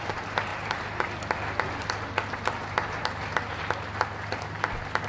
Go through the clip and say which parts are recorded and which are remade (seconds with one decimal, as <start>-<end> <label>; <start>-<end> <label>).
0.0-5.1 recorded